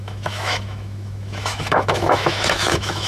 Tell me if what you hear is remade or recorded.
remade